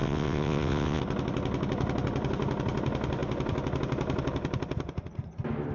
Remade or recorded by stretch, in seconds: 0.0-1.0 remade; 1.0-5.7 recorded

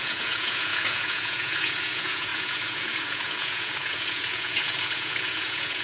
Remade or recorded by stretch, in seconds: 0.0-5.8 remade

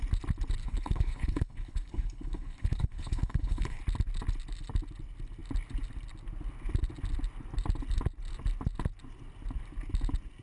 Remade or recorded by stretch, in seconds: 0.0-0.6 recorded; 0.6-3.8 remade; 3.8-10.4 recorded

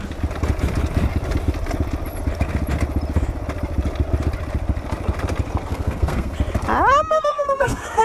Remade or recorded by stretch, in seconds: 0.0-5.7 recorded; 5.7-6.3 remade; 6.3-7.1 recorded; 7.1-8.0 remade

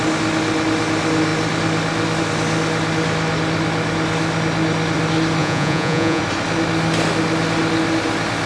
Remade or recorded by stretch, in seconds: 0.0-5.4 recorded; 5.4-6.2 remade; 6.2-8.5 recorded

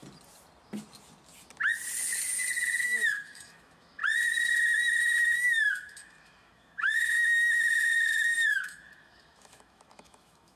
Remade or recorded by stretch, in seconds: 0.0-2.8 recorded; 2.8-4.0 remade; 4.0-5.0 recorded; 5.0-7.9 remade; 7.9-8.5 recorded; 8.5-10.6 remade